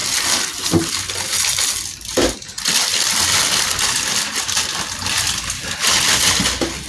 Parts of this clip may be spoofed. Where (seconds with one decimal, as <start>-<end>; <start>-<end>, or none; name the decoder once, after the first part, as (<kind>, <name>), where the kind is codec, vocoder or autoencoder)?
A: none